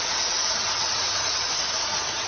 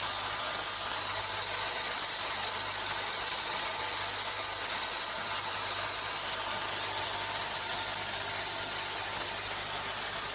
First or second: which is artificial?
first